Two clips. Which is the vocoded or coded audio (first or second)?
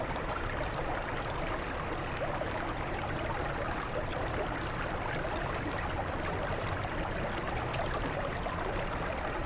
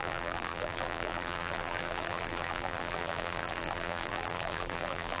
second